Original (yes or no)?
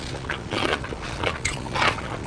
no